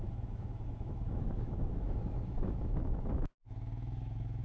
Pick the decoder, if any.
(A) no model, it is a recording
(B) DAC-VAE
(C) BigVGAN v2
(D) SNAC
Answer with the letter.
B